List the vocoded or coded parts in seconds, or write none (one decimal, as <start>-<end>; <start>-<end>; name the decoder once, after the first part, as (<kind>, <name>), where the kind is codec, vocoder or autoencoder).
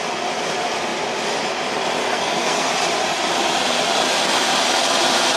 2.0-2.7 (codec, SNAC)